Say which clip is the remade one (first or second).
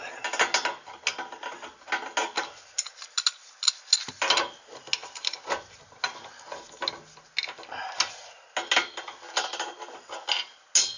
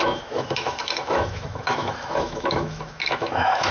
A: second